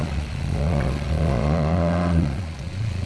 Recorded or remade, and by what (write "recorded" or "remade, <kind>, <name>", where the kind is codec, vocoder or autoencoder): remade, vocoder, Vocos